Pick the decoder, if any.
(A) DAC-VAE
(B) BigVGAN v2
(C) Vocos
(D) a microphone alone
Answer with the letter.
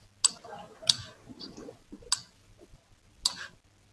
D